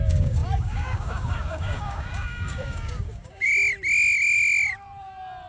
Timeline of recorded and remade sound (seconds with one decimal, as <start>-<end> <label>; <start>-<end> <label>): 0.0-3.5 remade; 3.5-5.5 recorded